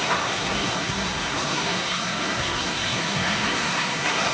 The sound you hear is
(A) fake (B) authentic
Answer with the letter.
A